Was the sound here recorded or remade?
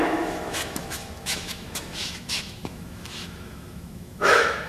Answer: remade